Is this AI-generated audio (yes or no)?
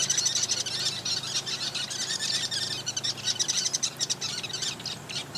no